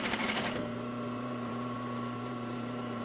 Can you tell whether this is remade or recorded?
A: remade